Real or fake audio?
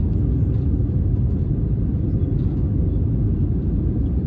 real